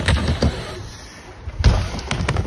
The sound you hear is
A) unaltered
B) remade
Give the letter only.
A